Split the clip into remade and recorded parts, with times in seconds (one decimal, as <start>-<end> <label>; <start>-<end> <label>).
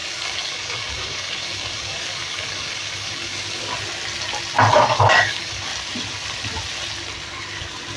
0.0-3.7 remade; 3.7-4.7 recorded; 4.7-5.7 remade; 5.7-8.0 recorded